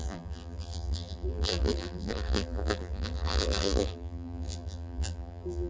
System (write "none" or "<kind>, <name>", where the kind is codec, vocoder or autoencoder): vocoder, BigVGAN v2